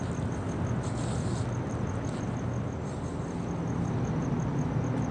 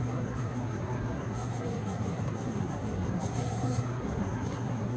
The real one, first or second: first